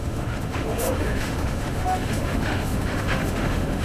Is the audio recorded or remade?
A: remade